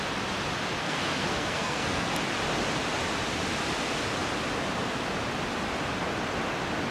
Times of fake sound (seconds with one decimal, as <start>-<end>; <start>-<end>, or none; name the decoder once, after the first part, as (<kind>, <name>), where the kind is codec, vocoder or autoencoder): 0.8-2.1 (codec, SNAC)